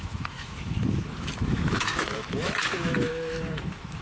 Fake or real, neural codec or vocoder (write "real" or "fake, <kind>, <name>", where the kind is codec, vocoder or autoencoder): fake, autoencoder, DAC-VAE